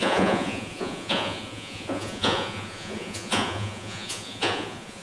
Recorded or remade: remade